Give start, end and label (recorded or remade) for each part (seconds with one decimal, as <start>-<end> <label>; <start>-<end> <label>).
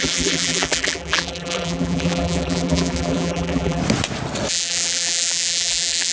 0.0-3.8 remade; 3.8-4.5 recorded; 4.5-6.1 remade